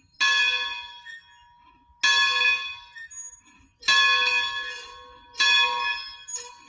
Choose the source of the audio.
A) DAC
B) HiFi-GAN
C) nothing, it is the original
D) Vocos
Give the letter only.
C